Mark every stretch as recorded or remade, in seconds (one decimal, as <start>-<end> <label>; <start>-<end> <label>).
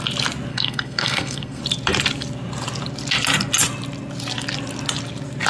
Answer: 0.0-0.5 recorded; 0.5-1.6 remade; 1.6-5.5 recorded